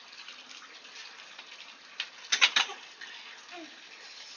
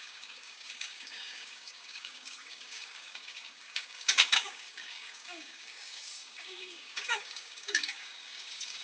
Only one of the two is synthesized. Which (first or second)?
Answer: second